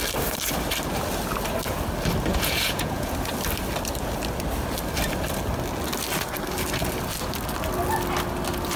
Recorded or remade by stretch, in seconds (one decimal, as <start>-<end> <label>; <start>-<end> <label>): 0.0-2.3 recorded; 2.3-3.1 remade; 3.1-8.8 recorded